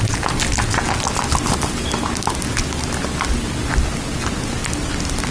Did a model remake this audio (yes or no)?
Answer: no